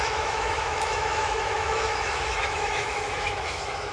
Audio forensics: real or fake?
fake